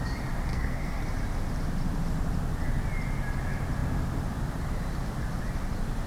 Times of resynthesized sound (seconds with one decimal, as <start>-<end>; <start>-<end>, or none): 0.5-1.0